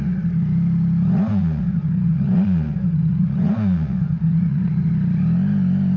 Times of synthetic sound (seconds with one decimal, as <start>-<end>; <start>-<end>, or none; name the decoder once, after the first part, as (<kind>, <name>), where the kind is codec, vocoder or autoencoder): 1.3-4.9 (vocoder, Vocos)